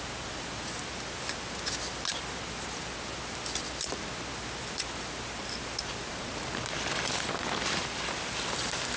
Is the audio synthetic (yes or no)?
no